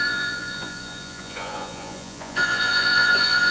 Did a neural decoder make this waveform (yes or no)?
yes